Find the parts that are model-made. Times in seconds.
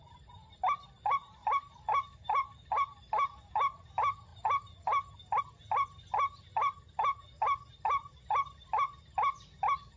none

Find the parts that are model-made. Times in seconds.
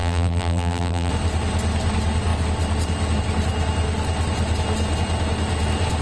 0.0-1.1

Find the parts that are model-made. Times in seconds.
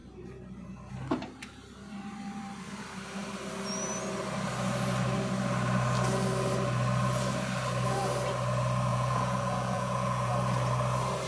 8.9-10.3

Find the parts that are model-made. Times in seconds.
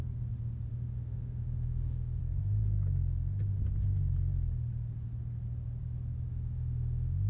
0.7-2.2; 6.3-7.3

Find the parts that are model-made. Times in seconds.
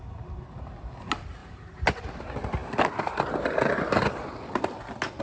none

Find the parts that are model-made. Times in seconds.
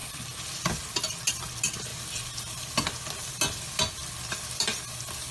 none